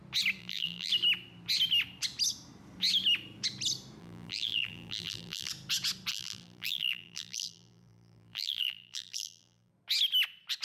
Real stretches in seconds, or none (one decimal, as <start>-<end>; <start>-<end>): 0.0-0.4; 0.9-4.0; 5.5-6.1; 9.7-10.6